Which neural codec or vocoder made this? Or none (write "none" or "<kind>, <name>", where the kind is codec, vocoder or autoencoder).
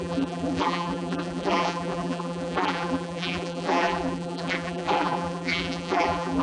vocoder, BigVGAN v2